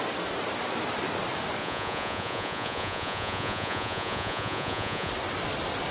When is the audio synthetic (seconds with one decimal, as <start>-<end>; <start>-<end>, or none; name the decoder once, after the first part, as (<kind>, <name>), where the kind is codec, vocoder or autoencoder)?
1.6-5.1 (vocoder, Vocos)